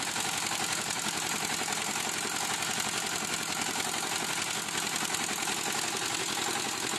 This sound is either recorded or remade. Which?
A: recorded